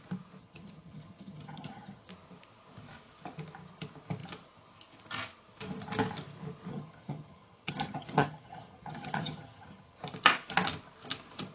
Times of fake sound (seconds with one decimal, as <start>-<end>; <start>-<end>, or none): 0.4-2.1; 6.7-10.0